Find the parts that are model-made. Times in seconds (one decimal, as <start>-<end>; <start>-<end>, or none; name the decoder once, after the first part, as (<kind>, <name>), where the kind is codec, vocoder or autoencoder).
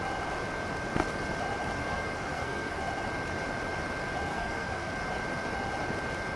1.8-2.8 (codec, SNAC); 4.3-4.9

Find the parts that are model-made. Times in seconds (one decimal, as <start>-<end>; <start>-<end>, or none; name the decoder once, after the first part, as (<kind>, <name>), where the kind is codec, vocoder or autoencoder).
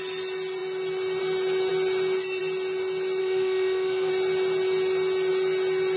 3.2-4.1 (codec, SNAC)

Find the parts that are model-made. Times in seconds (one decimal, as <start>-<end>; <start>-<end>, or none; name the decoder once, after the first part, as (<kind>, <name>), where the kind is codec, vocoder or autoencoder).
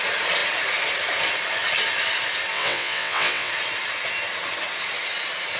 2.5-3.5 (vocoder, WaveNeXt)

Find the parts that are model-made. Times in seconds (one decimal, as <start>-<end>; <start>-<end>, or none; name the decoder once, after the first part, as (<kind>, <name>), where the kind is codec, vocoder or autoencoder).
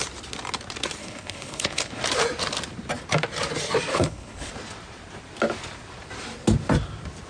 1.0-2.0 (codec, HILCodec); 3.9-4.5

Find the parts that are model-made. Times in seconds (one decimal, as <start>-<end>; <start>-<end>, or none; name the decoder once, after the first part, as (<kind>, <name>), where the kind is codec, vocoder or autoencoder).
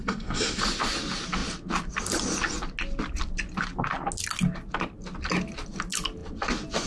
0.0-0.6 (codec, SNAC)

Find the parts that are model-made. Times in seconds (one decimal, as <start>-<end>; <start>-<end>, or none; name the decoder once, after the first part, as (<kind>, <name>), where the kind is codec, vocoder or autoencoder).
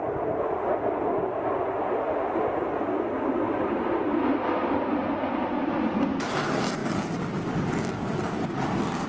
none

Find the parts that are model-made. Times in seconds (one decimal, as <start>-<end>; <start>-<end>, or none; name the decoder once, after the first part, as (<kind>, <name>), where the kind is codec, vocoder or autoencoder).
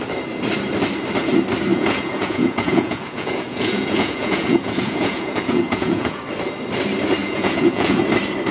1.7-6.2 (vocoder, Vocos); 7.2-8.0